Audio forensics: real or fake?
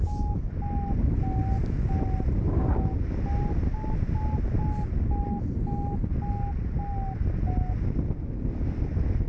real